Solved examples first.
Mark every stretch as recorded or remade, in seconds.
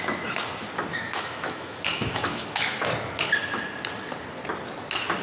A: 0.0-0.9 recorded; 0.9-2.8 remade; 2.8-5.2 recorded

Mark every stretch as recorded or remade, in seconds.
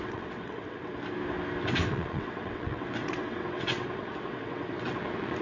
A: 0.0-0.9 remade; 0.9-1.6 recorded; 1.6-5.4 remade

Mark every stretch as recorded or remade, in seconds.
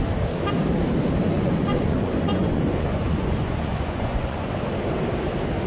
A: 0.0-1.3 recorded; 1.3-4.5 remade; 4.5-5.7 recorded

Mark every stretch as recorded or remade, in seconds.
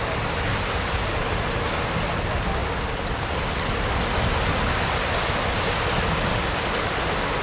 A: 0.0-7.4 recorded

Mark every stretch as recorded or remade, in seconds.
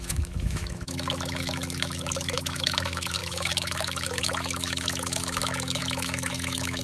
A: 0.0-6.8 remade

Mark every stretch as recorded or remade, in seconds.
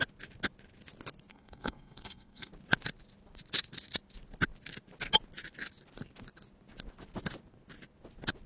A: 0.0-1.3 recorded; 1.3-2.5 remade; 2.5-8.5 recorded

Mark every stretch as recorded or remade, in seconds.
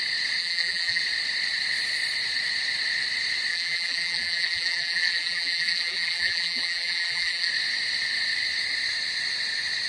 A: 0.0-0.4 recorded; 0.4-1.0 remade; 1.0-3.5 recorded; 3.5-7.5 remade; 7.5-9.9 recorded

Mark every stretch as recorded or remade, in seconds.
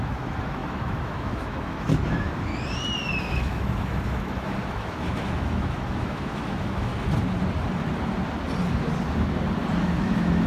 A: 0.0-2.5 remade; 2.5-3.2 recorded; 3.2-6.9 remade; 6.9-9.8 recorded; 9.8-10.5 remade